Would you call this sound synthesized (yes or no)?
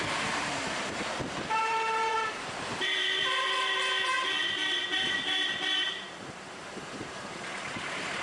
yes